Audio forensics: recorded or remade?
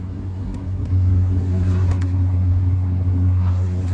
remade